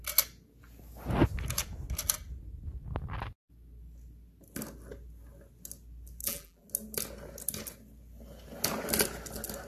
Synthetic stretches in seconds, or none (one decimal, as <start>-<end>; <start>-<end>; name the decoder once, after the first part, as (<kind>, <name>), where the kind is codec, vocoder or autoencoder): 6.2-6.7 (vocoder, BigVGAN v2)